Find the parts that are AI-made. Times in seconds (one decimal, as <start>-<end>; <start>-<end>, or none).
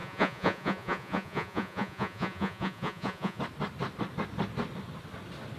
0.0-3.4